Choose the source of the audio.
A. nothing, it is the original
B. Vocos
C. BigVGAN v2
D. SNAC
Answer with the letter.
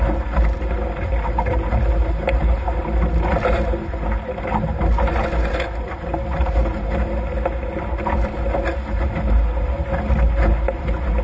A